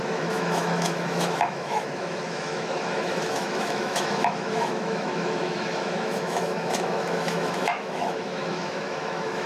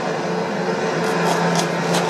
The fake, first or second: first